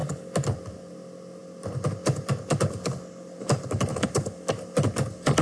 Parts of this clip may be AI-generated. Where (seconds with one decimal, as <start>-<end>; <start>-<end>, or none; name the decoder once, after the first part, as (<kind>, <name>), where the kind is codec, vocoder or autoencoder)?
none